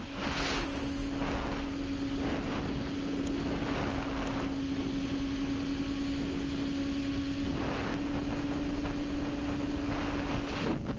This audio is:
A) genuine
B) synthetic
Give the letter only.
A